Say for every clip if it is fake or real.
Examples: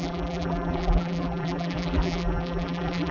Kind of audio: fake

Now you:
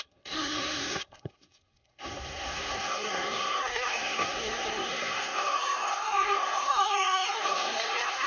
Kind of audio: fake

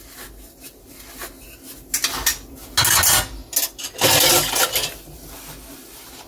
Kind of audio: real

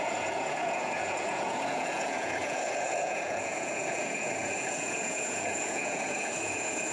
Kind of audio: fake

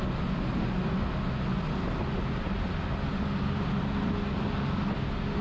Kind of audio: real